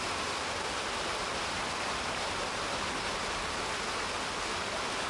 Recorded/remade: recorded